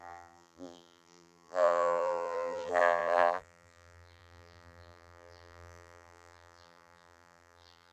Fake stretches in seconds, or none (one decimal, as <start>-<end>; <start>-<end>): 0.0-7.9